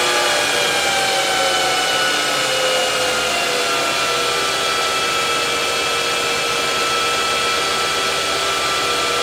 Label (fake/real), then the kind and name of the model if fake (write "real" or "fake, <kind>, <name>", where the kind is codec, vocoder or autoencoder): real